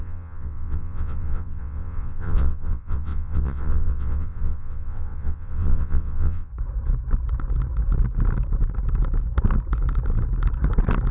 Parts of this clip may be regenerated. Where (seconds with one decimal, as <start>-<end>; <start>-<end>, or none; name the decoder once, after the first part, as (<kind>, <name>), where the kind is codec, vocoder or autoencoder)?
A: 0.0-6.5 (vocoder, WaveNeXt)